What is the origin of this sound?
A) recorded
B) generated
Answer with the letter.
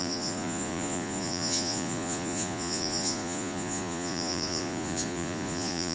B